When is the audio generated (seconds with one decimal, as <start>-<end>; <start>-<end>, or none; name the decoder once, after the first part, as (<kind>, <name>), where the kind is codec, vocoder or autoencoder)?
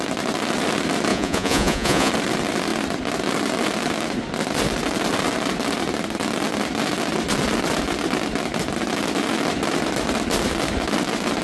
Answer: 1.1-2.1 (vocoder, Vocos)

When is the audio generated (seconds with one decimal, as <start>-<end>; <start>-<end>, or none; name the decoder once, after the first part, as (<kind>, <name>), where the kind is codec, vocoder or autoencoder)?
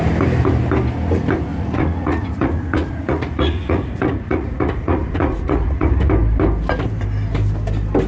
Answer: 1.5-6.1 (vocoder, Vocos)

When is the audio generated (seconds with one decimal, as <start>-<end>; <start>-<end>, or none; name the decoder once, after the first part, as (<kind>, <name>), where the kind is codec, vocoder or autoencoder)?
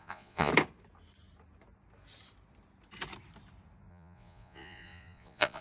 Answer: 0.0-0.5 (vocoder, Vocos); 3.9-5.6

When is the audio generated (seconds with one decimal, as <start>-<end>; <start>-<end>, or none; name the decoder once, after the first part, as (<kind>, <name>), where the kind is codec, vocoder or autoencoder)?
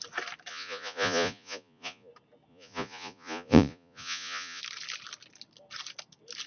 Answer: 0.5-2.1 (vocoder, Vocos); 2.5-4.6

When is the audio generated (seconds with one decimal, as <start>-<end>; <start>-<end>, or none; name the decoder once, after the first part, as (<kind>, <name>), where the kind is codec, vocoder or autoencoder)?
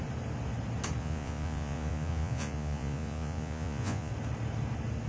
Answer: 1.0-4.1 (vocoder, Vocos)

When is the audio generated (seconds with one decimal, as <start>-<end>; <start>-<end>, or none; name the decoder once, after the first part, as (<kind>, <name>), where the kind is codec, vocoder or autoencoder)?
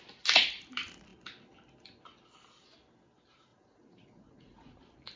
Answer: 3.5-4.8 (vocoder, Vocos)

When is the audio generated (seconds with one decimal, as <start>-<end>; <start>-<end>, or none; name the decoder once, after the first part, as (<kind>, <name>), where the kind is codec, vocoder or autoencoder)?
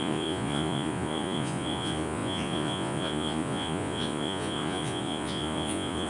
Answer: 0.0-6.1 (vocoder, Vocos)